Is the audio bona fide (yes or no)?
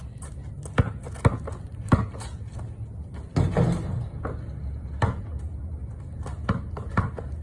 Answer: yes